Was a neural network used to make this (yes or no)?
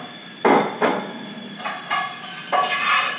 no